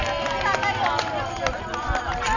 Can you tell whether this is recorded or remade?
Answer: recorded